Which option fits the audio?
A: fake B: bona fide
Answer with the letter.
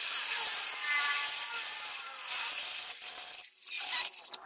B